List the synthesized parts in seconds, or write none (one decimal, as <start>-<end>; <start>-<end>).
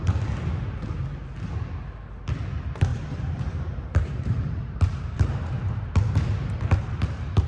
2.9-5.9